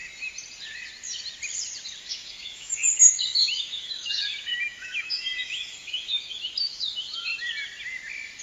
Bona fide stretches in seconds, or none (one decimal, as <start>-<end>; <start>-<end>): 0.0-2.0; 7.3-8.4